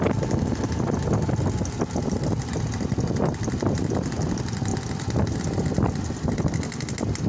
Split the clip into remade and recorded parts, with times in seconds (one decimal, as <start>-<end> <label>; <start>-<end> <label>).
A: 0.0-7.3 recorded

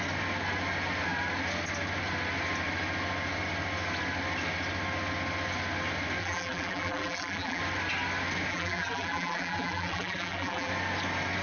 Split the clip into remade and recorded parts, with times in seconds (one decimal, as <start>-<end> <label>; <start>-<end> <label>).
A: 0.0-6.2 recorded; 6.2-7.6 remade; 7.6-8.5 recorded; 8.5-10.7 remade; 10.7-11.4 recorded

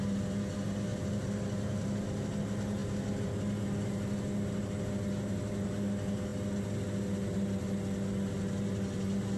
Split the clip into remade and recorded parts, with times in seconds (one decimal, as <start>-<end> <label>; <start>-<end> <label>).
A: 0.0-9.4 recorded

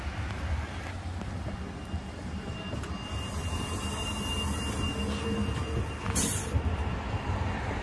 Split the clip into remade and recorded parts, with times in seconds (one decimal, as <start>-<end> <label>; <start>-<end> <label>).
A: 0.0-2.0 recorded; 2.0-2.9 remade; 2.9-7.8 recorded

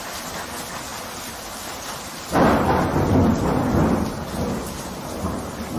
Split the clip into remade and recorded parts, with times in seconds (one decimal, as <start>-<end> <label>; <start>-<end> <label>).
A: 0.0-5.8 recorded